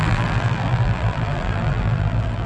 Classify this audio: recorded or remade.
remade